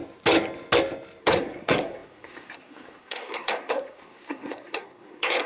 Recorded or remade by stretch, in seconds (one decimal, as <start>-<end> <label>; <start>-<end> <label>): 0.0-1.2 recorded; 1.2-5.5 remade